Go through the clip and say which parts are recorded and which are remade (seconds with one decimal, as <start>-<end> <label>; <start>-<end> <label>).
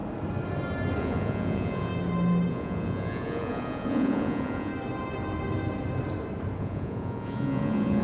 0.0-1.0 recorded; 1.0-1.9 remade; 1.9-2.5 recorded; 2.5-4.7 remade; 4.7-6.6 recorded; 6.6-8.0 remade